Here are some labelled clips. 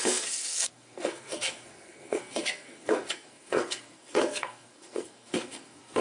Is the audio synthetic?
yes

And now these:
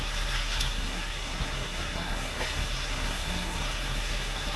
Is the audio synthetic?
yes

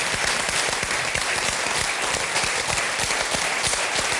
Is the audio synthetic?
no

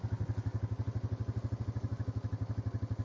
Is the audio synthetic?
no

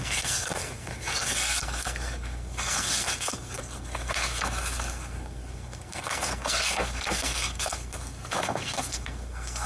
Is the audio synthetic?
yes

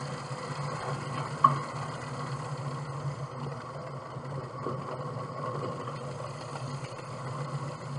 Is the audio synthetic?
no